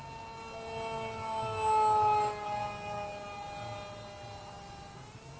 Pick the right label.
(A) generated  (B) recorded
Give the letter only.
B